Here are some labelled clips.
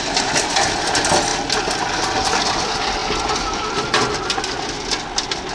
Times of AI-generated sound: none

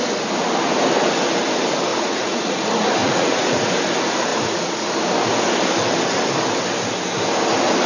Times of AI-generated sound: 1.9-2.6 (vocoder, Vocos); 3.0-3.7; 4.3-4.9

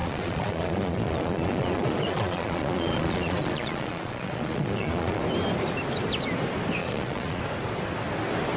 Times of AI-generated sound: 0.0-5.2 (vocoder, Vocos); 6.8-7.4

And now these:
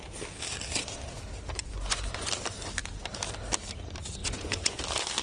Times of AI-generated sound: 1.6-2.3 (vocoder, Vocos); 4.2-4.8

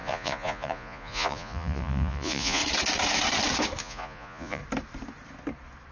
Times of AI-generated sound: 0.0-2.6 (vocoder, Vocos); 3.8-4.6

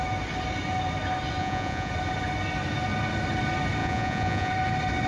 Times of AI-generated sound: 1.4-1.9 (vocoder, Vocos); 3.8-4.5

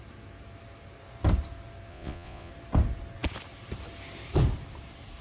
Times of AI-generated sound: 1.9-2.5 (vocoder, Vocos)